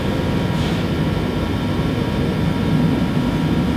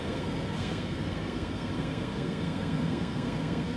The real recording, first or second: first